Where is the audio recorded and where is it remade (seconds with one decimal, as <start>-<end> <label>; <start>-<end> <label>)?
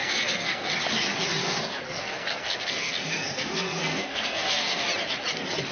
0.0-0.7 remade; 0.7-1.4 recorded; 1.4-4.8 remade; 4.8-5.7 recorded